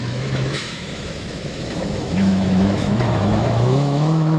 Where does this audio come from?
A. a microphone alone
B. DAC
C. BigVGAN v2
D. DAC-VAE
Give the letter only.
D